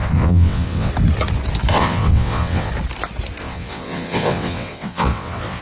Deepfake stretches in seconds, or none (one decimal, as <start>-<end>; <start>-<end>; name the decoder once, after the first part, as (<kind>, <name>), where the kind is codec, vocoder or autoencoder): 0.0-0.9 (vocoder, WaveNeXt); 1.7-2.7; 3.4-5.6